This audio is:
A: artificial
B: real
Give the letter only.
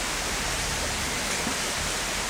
B